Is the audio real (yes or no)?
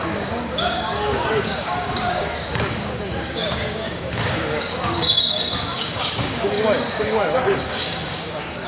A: no